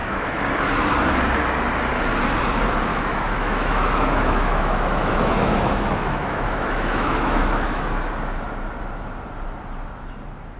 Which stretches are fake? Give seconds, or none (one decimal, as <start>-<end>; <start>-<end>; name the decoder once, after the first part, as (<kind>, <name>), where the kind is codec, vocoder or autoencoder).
0.0-0.5 (autoencoder, DAC-VAE); 2.9-7.8

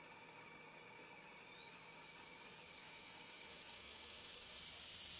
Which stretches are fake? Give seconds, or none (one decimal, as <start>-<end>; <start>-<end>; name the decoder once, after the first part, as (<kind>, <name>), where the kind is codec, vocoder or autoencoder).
2.8-4.6 (autoencoder, DAC-VAE)

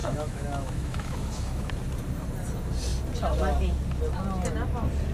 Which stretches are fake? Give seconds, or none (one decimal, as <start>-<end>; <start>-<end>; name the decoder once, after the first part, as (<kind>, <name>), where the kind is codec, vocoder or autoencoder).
0.0-1.7 (autoencoder, DAC-VAE)

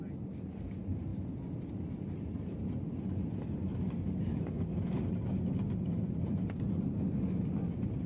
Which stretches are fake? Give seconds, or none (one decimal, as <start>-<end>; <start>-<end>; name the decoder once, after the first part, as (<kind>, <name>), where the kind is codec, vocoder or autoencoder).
none

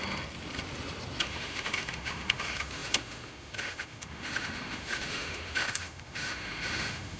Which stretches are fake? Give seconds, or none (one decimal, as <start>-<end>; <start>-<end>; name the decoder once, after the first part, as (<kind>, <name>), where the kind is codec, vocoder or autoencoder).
1.2-7.2 (autoencoder, DAC-VAE)